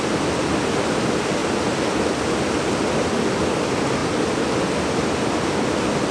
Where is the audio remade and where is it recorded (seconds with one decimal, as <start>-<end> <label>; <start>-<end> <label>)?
0.0-6.1 recorded